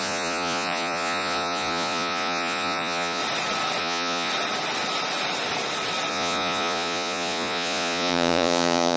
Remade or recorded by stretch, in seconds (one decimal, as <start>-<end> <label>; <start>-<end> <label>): 0.0-3.2 remade; 3.2-3.8 recorded; 3.8-4.3 remade; 4.3-6.1 recorded; 6.1-9.0 remade